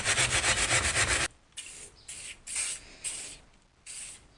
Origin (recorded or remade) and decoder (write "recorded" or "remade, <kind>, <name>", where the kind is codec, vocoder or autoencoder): recorded